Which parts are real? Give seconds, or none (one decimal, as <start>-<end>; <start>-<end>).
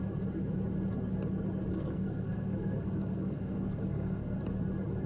0.0-1.7; 4.4-5.1